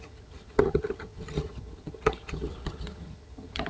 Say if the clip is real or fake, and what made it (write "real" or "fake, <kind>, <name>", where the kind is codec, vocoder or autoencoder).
fake, vocoder, HiFi-GAN